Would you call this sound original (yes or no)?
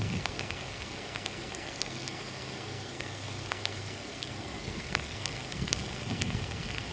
no